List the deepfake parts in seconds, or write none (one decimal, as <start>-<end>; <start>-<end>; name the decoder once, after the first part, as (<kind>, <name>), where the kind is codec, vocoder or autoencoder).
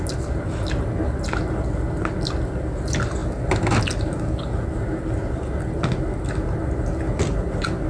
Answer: none